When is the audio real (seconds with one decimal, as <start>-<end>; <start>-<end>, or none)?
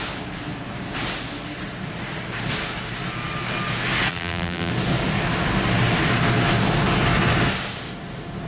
0.0-4.1; 4.7-8.5